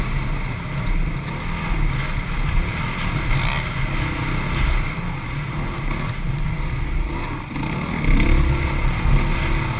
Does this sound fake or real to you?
real